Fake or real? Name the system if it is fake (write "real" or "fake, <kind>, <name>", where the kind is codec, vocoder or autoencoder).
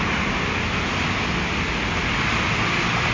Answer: real